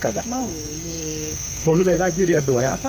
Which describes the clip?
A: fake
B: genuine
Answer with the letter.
A